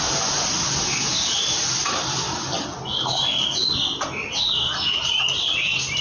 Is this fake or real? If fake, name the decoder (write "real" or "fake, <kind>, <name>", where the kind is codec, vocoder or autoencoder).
real